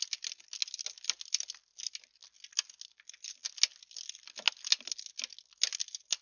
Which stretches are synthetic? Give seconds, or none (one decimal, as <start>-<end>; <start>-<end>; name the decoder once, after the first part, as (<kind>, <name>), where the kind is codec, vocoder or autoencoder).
none